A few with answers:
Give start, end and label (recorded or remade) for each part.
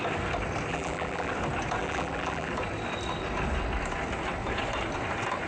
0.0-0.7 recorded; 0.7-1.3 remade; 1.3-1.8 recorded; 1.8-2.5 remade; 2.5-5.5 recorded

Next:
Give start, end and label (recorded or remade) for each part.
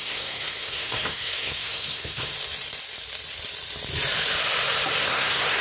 0.0-2.3 remade; 2.3-5.0 recorded; 5.0-5.6 remade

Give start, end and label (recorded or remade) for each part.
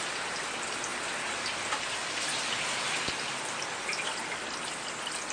0.0-5.3 recorded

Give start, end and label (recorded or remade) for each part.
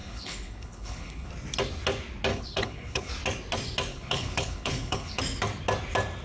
0.0-1.3 remade; 1.3-2.3 recorded; 2.3-3.1 remade; 3.1-3.9 recorded; 3.9-5.2 remade; 5.2-6.2 recorded